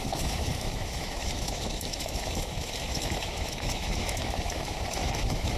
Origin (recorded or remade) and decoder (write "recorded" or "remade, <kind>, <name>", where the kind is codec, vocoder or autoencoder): remade, autoencoder, DAC-VAE